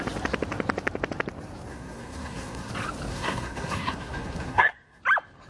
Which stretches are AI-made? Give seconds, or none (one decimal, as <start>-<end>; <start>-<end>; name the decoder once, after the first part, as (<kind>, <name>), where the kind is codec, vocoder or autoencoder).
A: 1.7-2.7 (codec, SNAC); 3.1-5.0